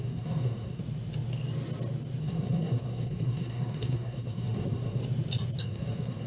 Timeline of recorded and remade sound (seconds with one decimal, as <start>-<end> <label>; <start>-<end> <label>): 0.0-0.8 remade; 0.8-2.2 recorded; 2.2-5.0 remade; 5.0-5.6 recorded; 5.6-6.3 remade